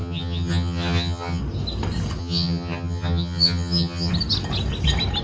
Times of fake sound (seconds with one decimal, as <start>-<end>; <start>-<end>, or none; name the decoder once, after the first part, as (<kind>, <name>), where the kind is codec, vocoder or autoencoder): 0.0-1.4 (vocoder, HiFi-GAN); 2.2-4.1